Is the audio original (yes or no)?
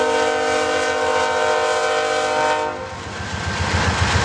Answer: yes